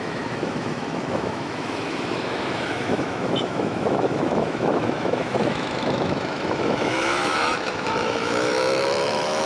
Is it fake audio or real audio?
fake